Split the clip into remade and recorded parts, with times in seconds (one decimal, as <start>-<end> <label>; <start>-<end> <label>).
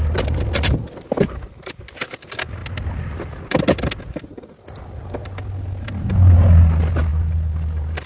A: 0.0-8.1 recorded